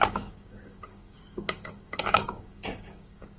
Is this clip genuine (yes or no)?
no